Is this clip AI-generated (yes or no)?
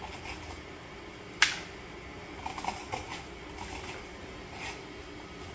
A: no